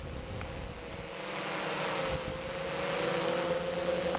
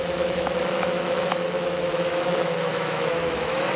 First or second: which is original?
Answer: first